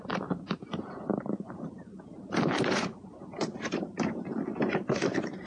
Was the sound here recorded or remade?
remade